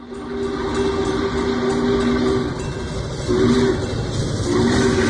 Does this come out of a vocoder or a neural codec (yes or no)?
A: no